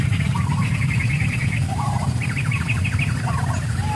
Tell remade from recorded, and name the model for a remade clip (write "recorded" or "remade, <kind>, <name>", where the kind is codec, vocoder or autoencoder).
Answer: remade, vocoder, BigVGAN v2